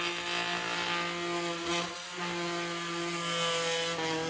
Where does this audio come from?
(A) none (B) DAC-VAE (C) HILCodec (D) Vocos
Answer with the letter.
A